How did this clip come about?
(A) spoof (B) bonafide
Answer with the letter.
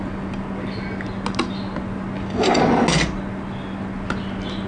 B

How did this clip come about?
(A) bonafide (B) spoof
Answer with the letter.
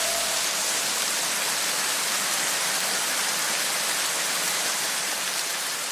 A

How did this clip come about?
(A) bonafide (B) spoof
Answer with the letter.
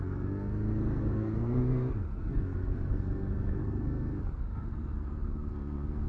B